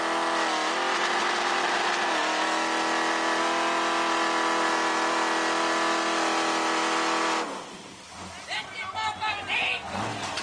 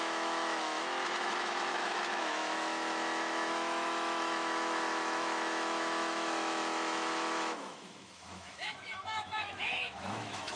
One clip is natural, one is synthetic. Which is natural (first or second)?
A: first